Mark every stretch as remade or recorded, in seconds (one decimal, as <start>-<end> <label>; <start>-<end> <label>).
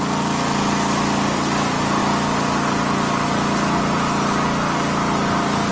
0.0-5.7 recorded